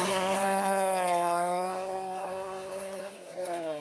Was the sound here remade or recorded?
remade